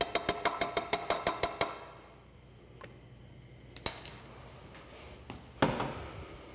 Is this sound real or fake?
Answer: real